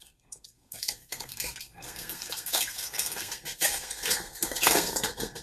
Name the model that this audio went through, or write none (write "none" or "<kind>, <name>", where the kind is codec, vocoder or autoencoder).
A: codec, SNAC